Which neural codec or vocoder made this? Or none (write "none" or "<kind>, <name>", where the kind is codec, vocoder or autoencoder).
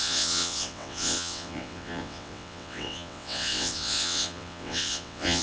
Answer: vocoder, WaveNeXt